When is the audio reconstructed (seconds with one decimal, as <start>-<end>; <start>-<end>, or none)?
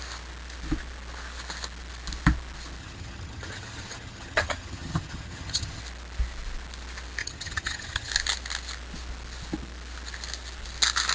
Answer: 2.8-5.8; 7.2-8.1